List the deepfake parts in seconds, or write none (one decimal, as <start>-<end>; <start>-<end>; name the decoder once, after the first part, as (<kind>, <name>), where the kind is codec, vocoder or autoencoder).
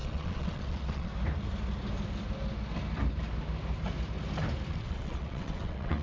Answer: 0.0-1.1 (vocoder, WaveNeXt); 4.7-6.0